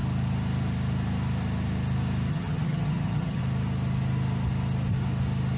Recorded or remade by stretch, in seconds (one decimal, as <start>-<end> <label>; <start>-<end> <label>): 0.0-2.3 recorded; 2.3-3.4 remade; 3.4-5.6 recorded